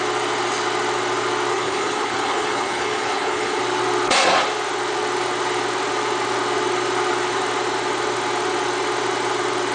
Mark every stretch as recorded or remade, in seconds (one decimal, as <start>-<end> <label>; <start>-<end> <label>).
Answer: 0.0-1.5 recorded; 1.5-3.6 remade; 3.6-9.7 recorded